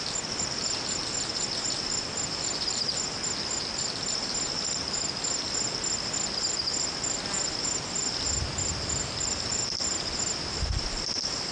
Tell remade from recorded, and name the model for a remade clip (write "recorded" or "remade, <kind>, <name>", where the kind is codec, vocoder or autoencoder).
recorded